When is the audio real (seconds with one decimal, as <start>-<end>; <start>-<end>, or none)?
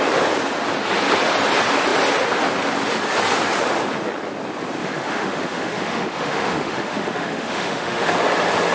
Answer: 0.0-4.8; 8.1-8.7